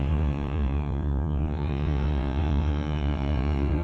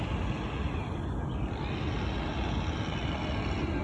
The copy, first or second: first